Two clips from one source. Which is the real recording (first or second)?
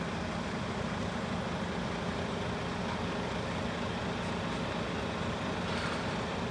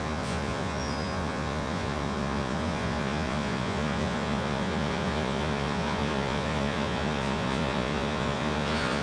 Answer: first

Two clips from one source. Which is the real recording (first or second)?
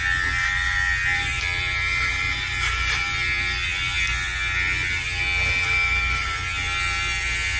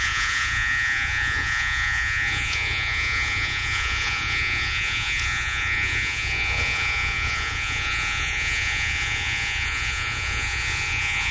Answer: first